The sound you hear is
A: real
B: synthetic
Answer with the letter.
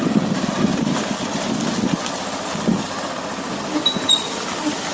A